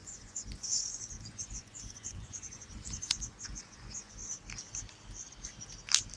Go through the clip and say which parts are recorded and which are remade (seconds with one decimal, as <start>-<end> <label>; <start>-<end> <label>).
0.0-4.2 remade; 4.2-6.2 recorded